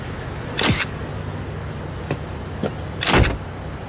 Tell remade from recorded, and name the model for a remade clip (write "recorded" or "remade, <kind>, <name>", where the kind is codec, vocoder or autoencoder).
recorded